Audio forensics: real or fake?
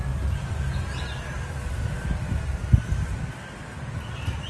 real